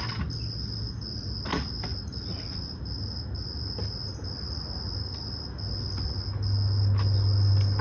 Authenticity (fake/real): real